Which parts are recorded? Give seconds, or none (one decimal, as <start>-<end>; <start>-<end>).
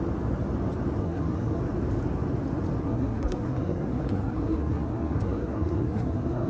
0.0-1.0; 1.6-2.8